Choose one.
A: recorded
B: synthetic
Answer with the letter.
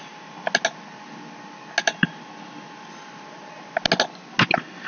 A